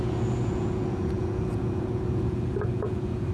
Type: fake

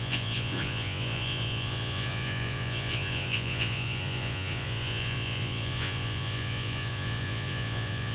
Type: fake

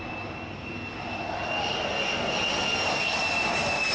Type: real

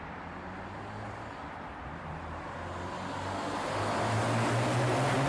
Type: real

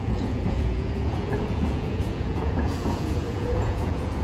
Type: fake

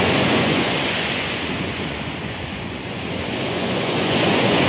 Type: fake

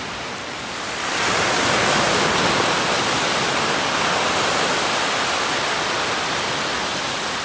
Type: real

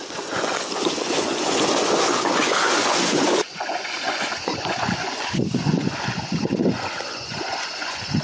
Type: fake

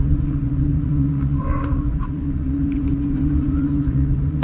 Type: fake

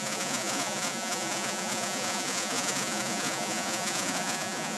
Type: fake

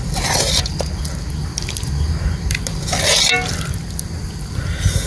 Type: real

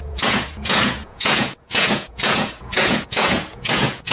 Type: fake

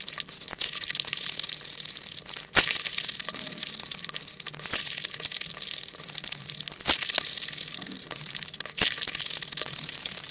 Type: real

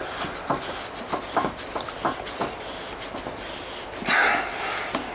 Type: real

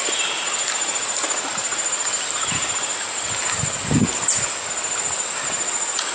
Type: real